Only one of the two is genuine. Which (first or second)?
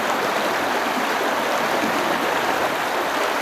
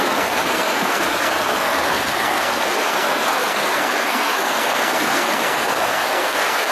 first